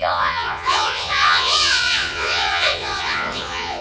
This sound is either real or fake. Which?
fake